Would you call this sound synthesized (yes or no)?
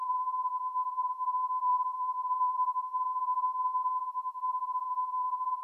yes